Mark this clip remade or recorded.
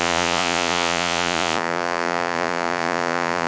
remade